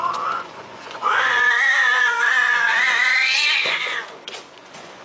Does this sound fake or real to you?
fake